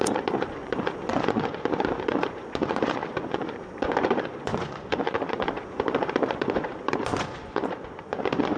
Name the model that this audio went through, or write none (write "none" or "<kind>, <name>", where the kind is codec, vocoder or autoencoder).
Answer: vocoder, Vocos